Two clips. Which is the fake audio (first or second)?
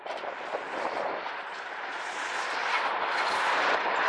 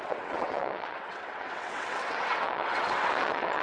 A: second